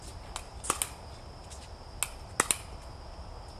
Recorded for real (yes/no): yes